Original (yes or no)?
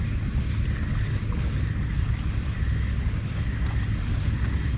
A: yes